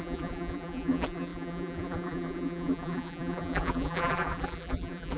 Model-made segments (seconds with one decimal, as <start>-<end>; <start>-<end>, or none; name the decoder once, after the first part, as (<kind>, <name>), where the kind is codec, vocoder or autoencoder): 0.0-5.2 (vocoder, BigVGAN v2)